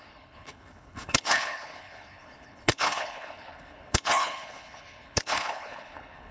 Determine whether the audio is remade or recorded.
remade